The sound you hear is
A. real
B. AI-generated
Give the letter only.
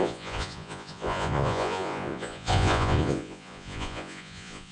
B